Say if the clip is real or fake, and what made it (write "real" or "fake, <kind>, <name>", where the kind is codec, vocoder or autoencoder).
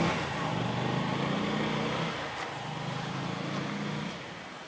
real